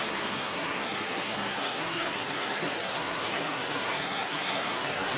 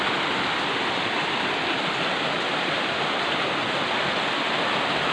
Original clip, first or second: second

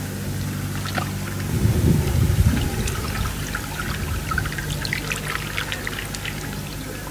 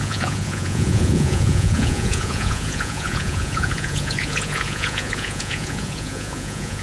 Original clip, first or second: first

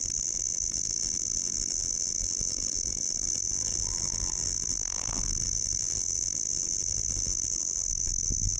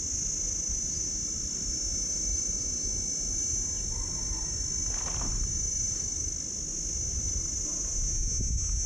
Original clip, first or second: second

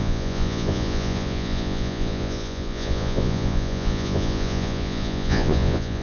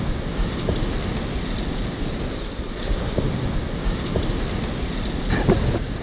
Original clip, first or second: second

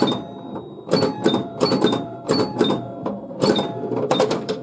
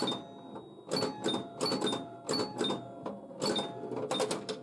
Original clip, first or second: second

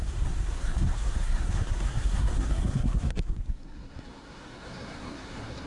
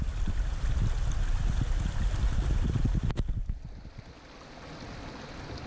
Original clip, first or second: second